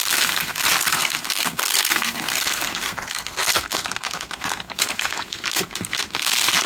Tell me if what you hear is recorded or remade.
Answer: remade